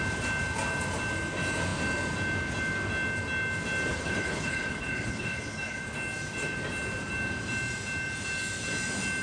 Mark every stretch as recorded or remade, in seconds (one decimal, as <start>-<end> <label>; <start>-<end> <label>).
0.0-3.9 recorded; 3.9-5.8 remade; 5.8-9.2 recorded